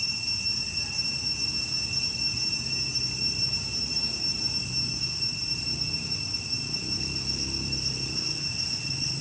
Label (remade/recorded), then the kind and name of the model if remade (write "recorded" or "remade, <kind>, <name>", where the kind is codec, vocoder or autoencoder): recorded